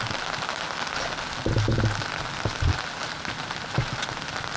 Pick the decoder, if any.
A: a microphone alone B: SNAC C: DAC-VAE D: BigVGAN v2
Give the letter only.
A